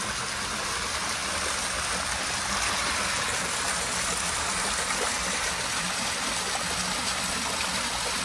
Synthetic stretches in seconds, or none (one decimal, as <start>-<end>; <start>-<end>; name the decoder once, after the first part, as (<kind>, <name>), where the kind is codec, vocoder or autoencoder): none